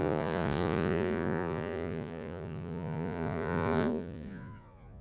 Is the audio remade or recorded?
remade